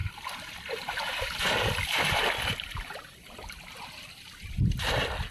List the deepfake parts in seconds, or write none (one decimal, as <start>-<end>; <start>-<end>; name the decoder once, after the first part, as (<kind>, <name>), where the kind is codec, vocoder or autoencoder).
none